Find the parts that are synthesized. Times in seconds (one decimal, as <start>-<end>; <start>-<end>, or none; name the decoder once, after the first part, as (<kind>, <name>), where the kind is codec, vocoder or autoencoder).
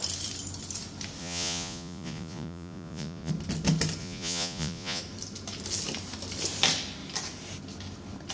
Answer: 1.2-3.3 (vocoder, Vocos); 4.0-5.0